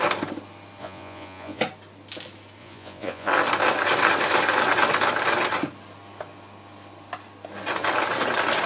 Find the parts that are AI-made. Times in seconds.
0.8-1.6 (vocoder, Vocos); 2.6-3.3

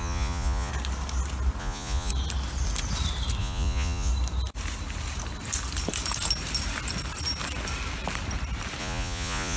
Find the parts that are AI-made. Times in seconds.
0.0-0.7 (vocoder, Vocos); 1.6-2.1; 3.4-4.1; 8.8-9.6

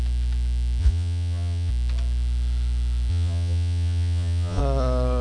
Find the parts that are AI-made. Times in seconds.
0.8-1.7 (vocoder, Vocos); 3.1-4.6

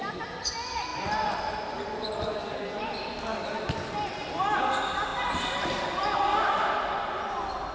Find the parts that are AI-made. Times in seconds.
none

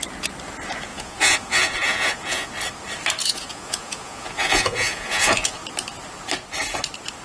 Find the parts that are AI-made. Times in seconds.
0.9-2.5 (vocoder, Vocos); 3.2-5.6